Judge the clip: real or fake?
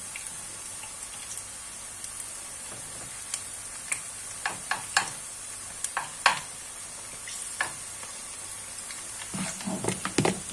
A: real